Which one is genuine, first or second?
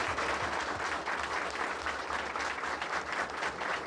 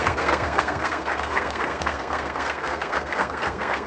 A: first